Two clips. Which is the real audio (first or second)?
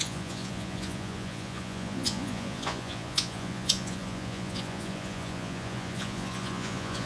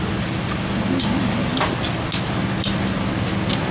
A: second